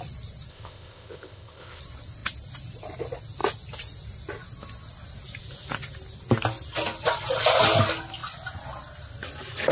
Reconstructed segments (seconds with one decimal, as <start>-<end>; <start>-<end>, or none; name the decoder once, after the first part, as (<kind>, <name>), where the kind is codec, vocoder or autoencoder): 0.5-1.8 (codec, ZipCodec)